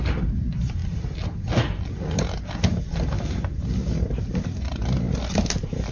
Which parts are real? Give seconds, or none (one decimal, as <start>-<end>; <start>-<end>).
0.0-5.9